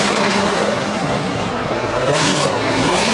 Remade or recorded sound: remade